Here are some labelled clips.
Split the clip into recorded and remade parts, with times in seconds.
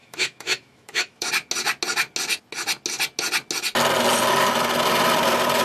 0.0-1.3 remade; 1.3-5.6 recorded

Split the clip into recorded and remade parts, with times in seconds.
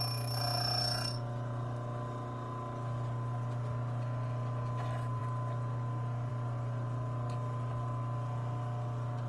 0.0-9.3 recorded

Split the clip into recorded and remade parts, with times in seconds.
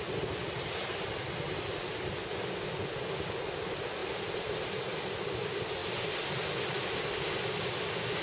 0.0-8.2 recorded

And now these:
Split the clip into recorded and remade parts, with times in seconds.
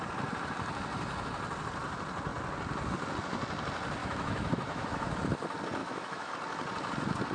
0.0-4.0 recorded; 4.0-5.2 remade; 5.2-5.8 recorded; 5.8-6.3 remade; 6.3-7.3 recorded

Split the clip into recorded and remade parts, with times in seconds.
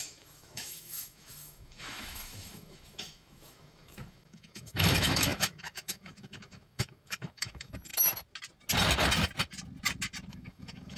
0.0-7.9 remade; 7.9-10.3 recorded; 10.3-11.0 remade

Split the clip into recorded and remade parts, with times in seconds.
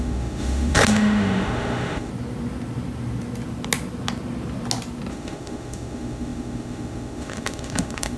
0.0-2.1 remade; 2.1-5.1 recorded; 5.1-8.2 remade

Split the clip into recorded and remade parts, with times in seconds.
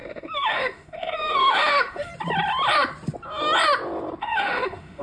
0.0-2.1 remade; 2.1-4.2 recorded; 4.2-5.0 remade